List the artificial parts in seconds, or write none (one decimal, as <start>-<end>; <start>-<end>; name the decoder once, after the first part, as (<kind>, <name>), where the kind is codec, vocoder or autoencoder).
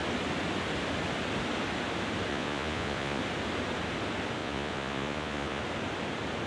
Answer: 2.3-3.2 (vocoder, Vocos); 4.4-5.6